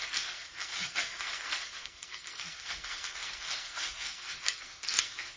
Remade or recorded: remade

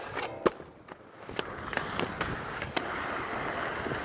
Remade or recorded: recorded